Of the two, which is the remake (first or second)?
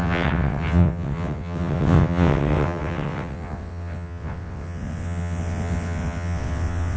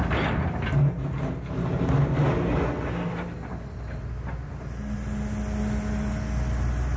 first